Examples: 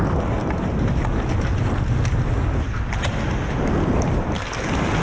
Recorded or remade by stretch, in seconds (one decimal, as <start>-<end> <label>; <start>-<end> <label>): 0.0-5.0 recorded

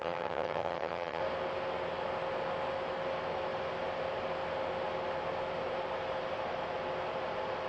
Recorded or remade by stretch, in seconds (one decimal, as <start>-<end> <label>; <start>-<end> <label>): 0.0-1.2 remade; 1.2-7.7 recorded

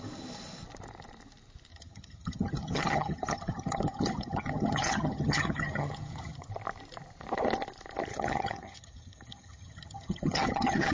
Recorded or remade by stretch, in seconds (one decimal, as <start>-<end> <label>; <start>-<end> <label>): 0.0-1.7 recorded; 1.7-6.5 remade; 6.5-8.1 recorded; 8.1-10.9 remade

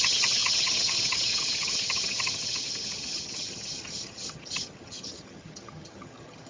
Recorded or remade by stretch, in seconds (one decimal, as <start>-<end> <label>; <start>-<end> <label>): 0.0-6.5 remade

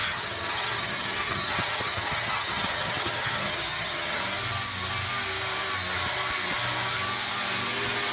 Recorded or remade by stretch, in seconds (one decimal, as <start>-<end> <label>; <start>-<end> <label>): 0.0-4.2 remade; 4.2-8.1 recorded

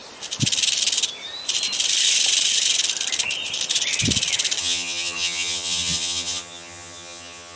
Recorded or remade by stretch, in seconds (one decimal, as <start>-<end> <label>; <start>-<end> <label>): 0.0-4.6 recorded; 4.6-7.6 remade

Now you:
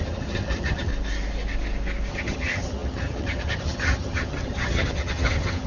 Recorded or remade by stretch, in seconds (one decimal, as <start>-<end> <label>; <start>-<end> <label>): 0.0-0.9 remade; 0.9-2.1 recorded; 2.1-5.7 remade